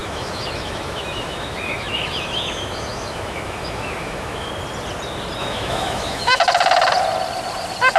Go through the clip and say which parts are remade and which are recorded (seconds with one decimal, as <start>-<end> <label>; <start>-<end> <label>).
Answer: 0.0-4.5 remade; 4.5-5.4 recorded; 5.4-6.4 remade; 6.4-8.0 recorded